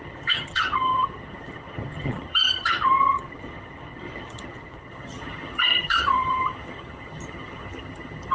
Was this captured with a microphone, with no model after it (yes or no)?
no